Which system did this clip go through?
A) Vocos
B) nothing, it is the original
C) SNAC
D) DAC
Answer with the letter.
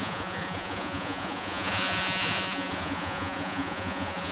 A